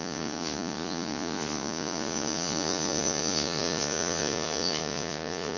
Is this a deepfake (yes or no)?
yes